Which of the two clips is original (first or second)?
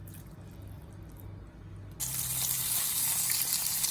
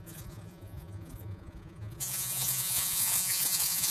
first